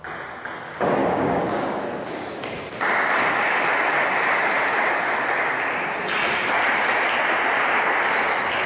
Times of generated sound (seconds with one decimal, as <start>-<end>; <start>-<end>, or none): 1.0-2.6